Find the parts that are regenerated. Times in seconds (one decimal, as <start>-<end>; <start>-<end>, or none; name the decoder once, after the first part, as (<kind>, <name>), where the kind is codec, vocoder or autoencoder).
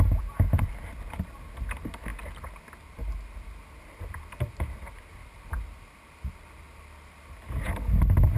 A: none